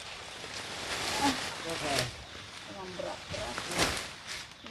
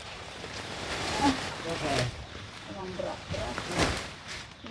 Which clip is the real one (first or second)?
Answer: first